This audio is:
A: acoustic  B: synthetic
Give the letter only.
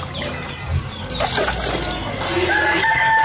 A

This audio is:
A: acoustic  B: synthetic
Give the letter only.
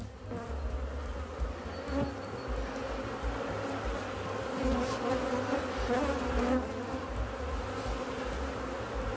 A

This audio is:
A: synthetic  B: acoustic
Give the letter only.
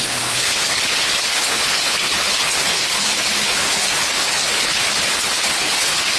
A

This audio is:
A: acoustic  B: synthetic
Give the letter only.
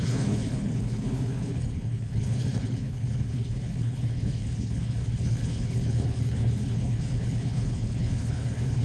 B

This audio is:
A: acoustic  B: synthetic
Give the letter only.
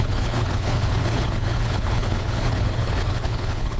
B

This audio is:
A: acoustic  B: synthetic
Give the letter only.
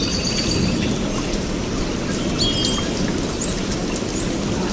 A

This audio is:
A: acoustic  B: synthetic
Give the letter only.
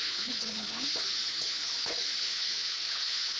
B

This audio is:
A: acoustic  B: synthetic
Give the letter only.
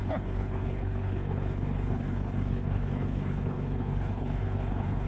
B